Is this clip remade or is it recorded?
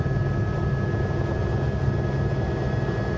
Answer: recorded